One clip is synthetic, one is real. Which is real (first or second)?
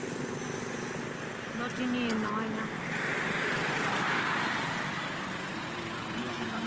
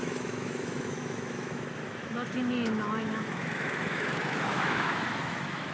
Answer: first